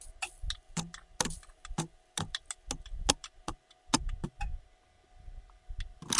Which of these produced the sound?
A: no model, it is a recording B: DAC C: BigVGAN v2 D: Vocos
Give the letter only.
A